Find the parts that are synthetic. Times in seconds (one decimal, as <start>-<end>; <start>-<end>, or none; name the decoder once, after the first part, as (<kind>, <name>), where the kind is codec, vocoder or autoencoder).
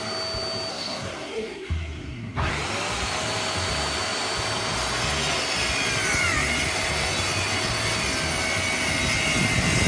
0.7-2.5 (codec, SNAC)